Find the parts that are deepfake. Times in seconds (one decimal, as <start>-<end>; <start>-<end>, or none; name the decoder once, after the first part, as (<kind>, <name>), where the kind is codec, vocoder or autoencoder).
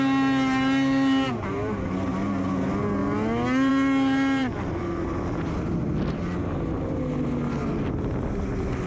none